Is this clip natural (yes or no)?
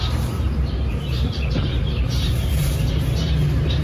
no